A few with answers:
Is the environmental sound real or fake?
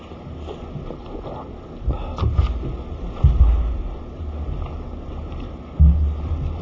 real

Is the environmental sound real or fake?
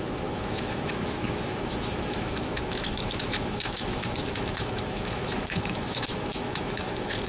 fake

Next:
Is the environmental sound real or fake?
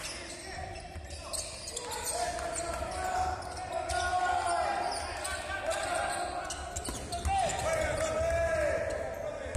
real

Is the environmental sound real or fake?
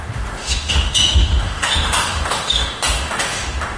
fake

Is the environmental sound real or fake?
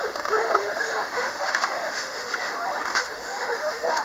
fake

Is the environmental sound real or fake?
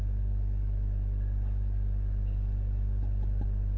real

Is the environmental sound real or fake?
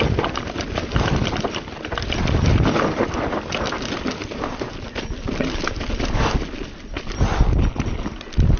real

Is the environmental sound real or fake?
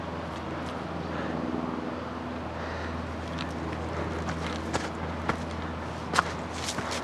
real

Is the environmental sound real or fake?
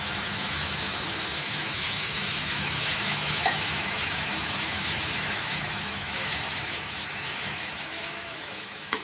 fake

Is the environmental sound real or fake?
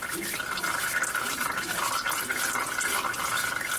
real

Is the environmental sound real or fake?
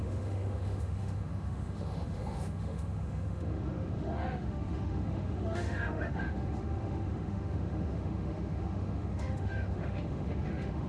fake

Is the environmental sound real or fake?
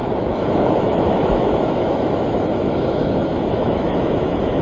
fake